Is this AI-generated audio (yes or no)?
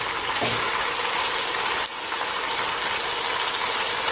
no